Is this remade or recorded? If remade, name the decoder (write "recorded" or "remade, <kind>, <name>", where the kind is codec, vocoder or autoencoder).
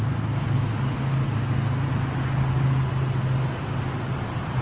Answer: recorded